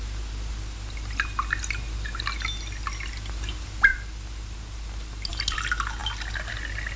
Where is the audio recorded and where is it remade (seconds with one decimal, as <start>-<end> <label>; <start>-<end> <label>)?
0.0-7.0 recorded